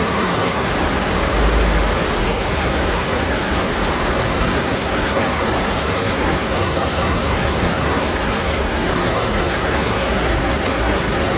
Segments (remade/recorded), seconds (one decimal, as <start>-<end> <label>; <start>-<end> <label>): 0.0-0.7 remade; 0.7-2.2 recorded; 2.2-3.7 remade; 3.7-4.2 recorded; 4.2-11.4 remade